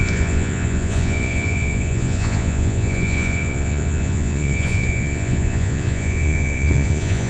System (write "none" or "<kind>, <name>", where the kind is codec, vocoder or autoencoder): vocoder, Vocos